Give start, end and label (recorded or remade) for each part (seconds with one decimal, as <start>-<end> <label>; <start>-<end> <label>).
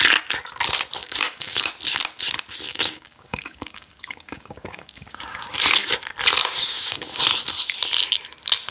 0.0-1.0 recorded; 1.0-1.7 remade; 1.7-2.7 recorded; 2.7-5.5 remade; 5.5-6.4 recorded; 6.4-7.2 remade; 7.2-8.7 recorded